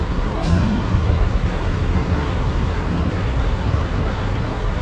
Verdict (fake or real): fake